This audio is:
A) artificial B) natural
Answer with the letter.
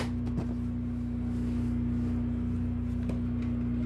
B